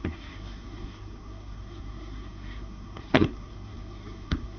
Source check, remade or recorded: remade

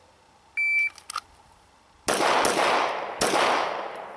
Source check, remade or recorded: recorded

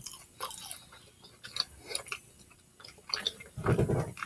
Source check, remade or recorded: recorded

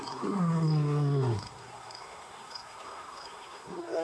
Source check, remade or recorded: remade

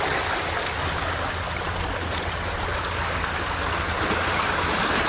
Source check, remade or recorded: recorded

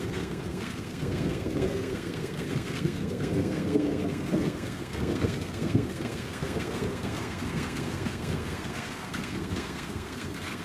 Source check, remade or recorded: remade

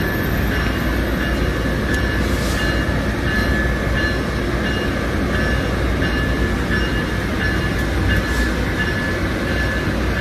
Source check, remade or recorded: recorded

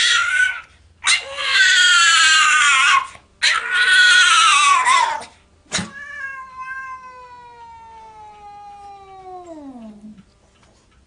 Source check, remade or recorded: recorded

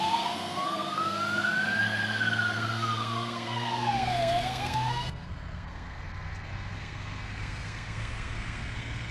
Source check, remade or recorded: remade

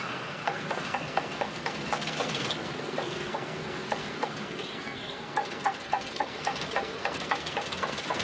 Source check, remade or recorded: remade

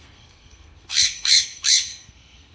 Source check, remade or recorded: remade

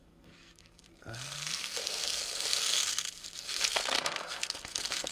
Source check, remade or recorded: remade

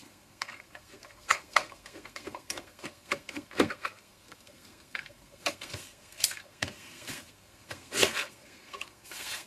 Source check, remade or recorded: remade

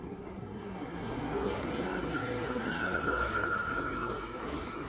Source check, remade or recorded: remade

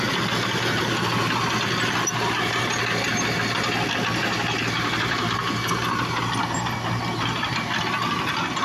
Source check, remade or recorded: recorded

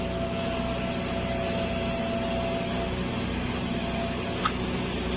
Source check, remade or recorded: recorded